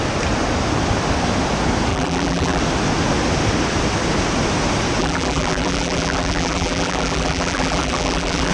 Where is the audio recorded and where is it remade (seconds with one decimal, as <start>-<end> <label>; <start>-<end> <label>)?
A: 0.0-1.9 recorded; 1.9-2.6 remade; 2.6-5.0 recorded; 5.0-8.5 remade